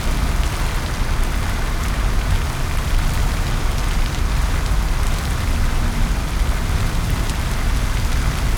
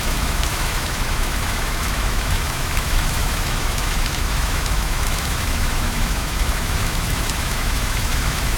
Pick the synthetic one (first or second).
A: second